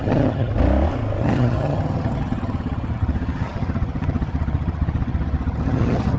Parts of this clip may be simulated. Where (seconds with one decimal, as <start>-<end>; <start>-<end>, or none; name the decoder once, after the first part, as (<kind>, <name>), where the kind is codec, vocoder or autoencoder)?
0.0-0.5 (vocoder, HiFi-GAN); 1.2-6.2